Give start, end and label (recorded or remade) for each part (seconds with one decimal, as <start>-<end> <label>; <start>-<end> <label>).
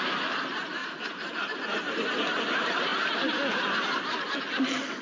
0.0-0.8 recorded; 0.8-1.6 remade; 1.6-5.0 recorded